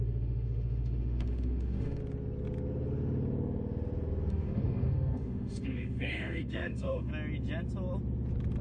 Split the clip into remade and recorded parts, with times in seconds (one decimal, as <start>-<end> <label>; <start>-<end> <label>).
0.0-2.0 remade; 2.0-4.3 recorded; 4.3-7.1 remade; 7.1-8.6 recorded